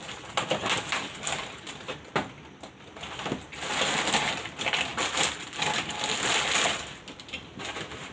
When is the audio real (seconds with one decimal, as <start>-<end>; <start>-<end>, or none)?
0.0-8.1